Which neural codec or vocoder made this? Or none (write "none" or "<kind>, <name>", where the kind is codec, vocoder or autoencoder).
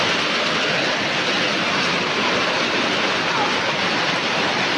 none